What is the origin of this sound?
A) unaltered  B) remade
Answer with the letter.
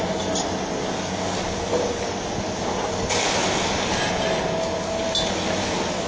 A